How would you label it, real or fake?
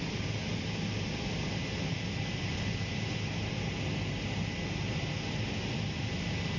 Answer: real